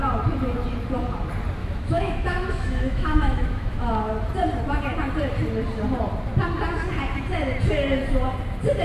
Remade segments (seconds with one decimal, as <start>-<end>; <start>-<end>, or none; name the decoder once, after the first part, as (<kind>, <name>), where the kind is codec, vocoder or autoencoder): 1.6-3.9 (autoencoder, DAC-VAE)